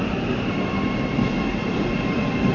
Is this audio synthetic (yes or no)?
yes